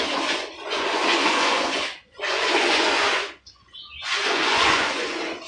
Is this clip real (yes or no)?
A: no